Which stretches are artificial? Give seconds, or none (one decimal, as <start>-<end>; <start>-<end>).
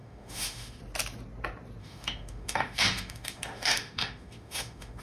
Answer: 0.0-0.8; 1.8-5.0